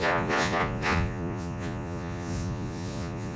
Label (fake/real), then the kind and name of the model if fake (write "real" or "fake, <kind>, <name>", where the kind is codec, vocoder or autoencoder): fake, vocoder, Vocos